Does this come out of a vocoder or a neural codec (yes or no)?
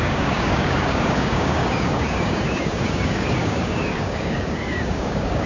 yes